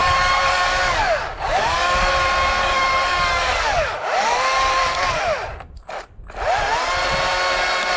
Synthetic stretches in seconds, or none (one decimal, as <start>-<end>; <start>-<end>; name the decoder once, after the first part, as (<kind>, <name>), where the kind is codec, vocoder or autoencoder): 0.0-2.1 (codec, DAC); 2.6-5.2